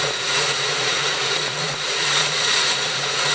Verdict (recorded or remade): remade